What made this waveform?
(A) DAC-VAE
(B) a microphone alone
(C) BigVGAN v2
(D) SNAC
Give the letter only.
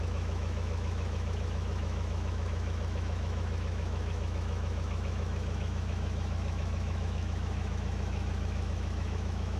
A